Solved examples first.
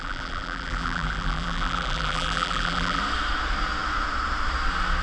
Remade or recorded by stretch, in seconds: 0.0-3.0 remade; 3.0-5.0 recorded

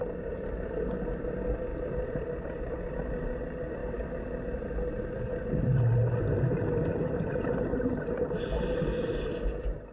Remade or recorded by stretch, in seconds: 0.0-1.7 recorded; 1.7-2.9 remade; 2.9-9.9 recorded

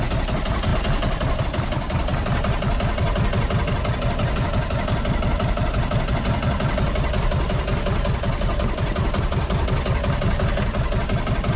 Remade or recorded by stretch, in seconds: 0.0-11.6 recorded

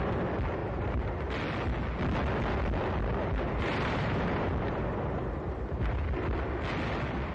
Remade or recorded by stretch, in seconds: 0.0-0.6 recorded; 0.6-1.3 remade; 1.3-3.3 recorded; 3.3-5.9 remade; 5.9-7.3 recorded

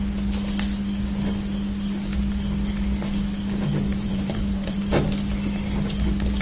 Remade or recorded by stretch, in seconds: 0.0-3.9 recorded; 3.9-4.8 remade; 4.8-6.4 recorded